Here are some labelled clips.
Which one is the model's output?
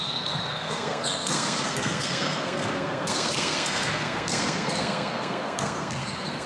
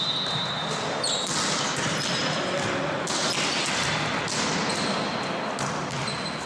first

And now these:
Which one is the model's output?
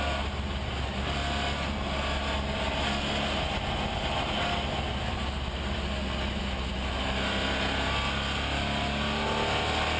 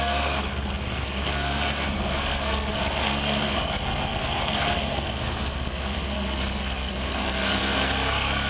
second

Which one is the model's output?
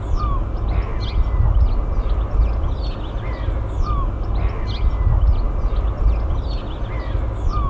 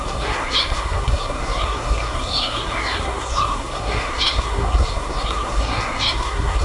second